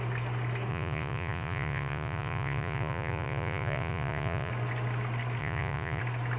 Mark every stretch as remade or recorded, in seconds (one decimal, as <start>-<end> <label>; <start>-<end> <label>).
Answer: 0.0-0.7 recorded; 0.7-4.5 remade; 4.5-5.4 recorded; 5.4-6.0 remade; 6.0-6.4 recorded